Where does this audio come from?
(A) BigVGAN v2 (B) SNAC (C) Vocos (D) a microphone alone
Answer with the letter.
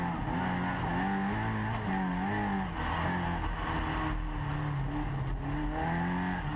D